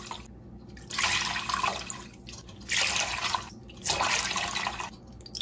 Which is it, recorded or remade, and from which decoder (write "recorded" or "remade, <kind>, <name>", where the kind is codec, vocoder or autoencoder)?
recorded